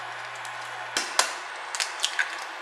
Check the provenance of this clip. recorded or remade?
recorded